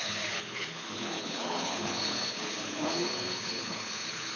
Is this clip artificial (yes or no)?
yes